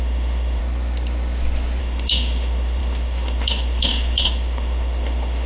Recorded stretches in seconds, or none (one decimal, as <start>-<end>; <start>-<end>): 0.6-1.8